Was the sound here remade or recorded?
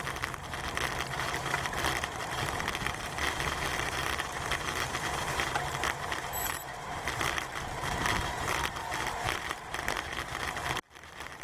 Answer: remade